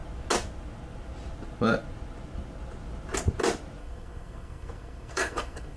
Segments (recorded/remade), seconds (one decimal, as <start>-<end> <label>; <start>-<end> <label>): 0.0-3.8 recorded; 3.8-5.8 remade